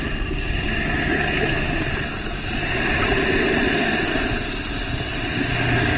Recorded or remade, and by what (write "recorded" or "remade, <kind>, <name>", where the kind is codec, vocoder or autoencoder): recorded